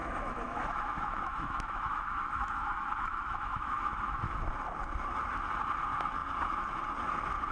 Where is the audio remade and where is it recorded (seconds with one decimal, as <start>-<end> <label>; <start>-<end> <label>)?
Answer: 0.0-4.5 remade; 4.5-7.5 recorded

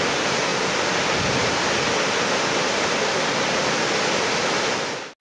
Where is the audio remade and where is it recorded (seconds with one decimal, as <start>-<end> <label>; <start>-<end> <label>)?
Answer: 0.0-5.2 recorded